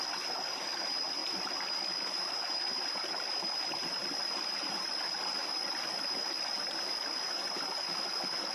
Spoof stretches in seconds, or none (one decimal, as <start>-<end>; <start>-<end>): 1.2-2.0; 4.0-5.9